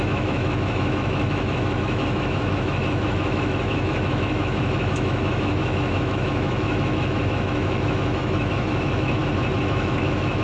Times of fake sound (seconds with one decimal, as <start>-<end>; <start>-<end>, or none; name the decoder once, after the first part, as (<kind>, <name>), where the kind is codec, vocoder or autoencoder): 0.0-9.2 (autoencoder, DAC-VAE); 9.7-10.4